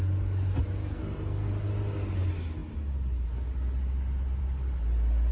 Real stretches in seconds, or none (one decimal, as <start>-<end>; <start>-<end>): 0.0-0.8; 1.5-5.3